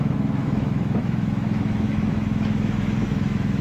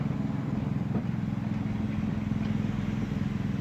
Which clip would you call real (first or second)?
second